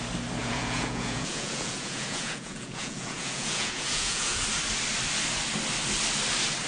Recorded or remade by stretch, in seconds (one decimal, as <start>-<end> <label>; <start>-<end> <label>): 0.0-0.4 recorded; 0.4-4.4 remade; 4.4-6.7 recorded